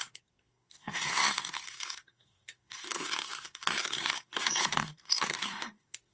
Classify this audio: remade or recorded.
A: remade